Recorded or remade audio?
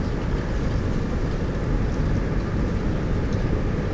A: recorded